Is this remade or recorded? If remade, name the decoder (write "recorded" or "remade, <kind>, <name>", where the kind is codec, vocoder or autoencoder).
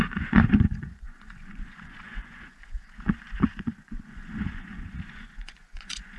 remade, vocoder, Vocos